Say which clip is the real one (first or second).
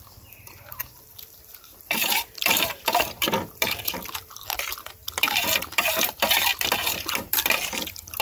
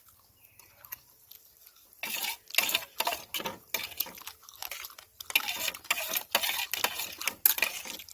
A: second